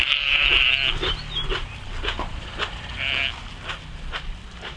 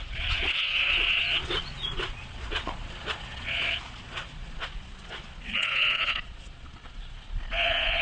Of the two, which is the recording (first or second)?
first